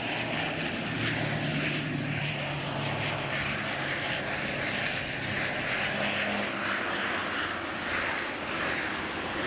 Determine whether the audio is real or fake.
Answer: real